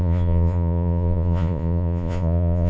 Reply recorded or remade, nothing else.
remade